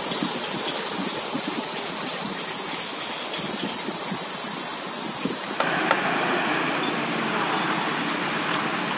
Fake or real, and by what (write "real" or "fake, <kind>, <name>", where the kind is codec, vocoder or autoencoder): real